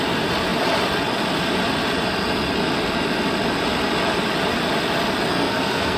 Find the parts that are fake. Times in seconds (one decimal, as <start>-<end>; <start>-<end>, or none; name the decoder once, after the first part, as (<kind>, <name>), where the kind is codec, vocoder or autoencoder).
5.3-6.0 (codec, SNAC)